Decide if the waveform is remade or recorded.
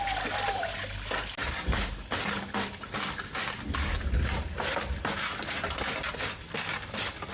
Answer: recorded